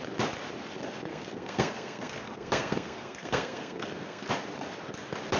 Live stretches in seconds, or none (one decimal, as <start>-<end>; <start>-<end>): 0.0-1.1; 4.3-5.4

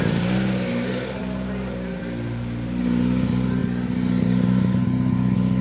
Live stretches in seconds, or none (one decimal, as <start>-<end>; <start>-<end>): 0.0-5.6